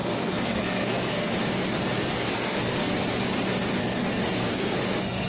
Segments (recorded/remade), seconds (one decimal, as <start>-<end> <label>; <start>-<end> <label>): 0.0-1.3 remade; 1.3-2.1 recorded; 2.1-2.9 remade; 2.9-3.8 recorded; 3.8-5.3 remade